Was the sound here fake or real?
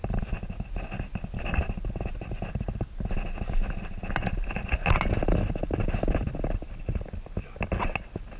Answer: real